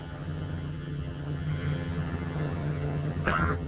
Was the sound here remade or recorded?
remade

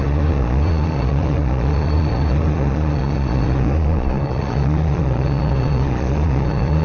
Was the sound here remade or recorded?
remade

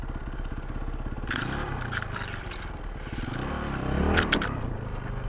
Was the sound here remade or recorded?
remade